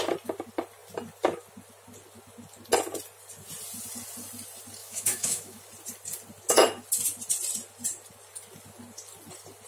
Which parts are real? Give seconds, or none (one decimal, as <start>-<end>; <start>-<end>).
0.0-4.8; 5.6-9.7